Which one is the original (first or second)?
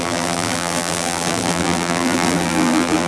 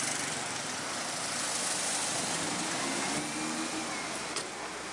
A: second